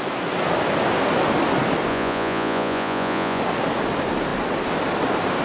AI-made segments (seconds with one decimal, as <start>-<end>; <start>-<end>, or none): 1.9-3.4